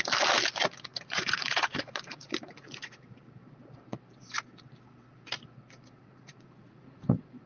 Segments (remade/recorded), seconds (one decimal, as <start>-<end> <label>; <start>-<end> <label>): 0.0-0.9 recorded; 0.9-3.2 remade; 3.2-6.0 recorded; 6.0-7.5 remade